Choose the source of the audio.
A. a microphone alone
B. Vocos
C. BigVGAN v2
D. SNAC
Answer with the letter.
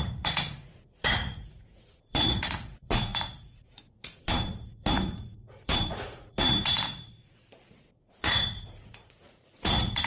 B